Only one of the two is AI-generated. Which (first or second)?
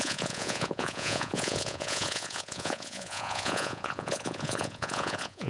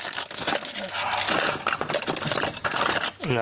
first